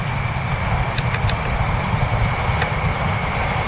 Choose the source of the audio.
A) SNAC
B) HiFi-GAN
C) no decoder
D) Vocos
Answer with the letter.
C